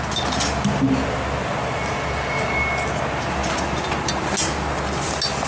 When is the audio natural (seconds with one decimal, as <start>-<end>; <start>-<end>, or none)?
0.0-5.5